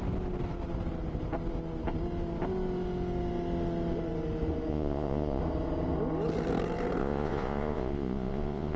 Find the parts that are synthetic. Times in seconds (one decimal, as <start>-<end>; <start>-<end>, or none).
4.7-5.4; 7.0-8.8